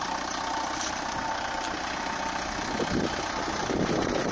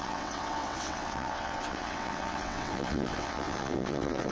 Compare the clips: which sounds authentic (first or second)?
first